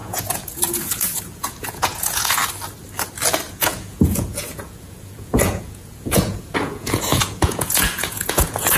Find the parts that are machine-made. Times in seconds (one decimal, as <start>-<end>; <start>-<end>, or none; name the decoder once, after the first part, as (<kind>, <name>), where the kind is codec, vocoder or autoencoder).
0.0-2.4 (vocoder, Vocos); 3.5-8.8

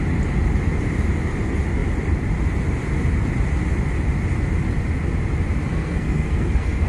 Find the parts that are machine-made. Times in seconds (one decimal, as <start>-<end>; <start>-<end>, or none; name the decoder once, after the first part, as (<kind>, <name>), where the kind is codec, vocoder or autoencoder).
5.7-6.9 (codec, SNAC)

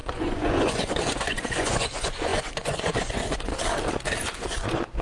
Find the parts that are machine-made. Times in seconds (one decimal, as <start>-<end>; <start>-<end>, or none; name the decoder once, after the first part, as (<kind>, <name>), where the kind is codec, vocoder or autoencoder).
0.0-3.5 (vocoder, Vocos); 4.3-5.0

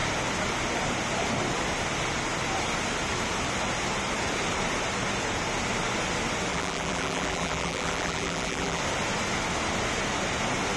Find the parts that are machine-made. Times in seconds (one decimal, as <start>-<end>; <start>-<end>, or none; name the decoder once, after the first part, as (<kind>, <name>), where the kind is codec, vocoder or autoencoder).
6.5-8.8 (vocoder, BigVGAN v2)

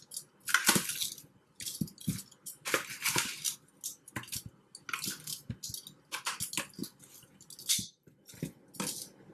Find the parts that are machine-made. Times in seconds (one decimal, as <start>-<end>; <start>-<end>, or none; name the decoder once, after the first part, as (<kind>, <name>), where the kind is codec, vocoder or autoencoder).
none

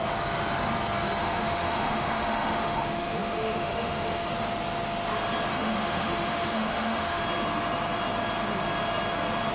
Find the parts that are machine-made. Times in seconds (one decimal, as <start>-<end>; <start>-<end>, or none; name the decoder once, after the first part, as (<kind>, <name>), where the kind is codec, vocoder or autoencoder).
1.2-4.3 (autoencoder, DAC-VAE); 5.5-7.2